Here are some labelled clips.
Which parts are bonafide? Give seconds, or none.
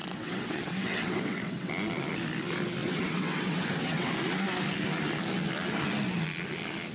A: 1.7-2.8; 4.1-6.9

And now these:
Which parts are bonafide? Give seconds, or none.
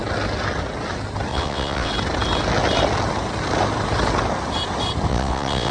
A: 0.0-1.3; 1.9-5.1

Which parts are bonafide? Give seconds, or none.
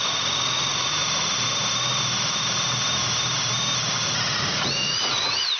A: 1.0-4.4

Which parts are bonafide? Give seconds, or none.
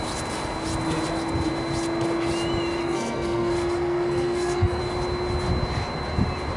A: 0.0-2.8; 4.8-6.6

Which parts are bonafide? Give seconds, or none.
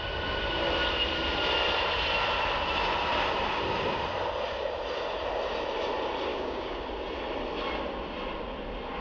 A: 0.0-6.3; 6.9-9.0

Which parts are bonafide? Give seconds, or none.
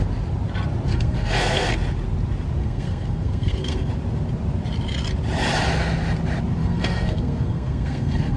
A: 0.0-0.9; 1.7-2.6; 3.9-6.6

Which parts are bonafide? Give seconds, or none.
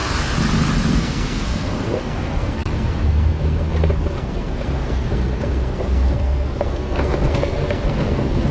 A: 0.0-0.9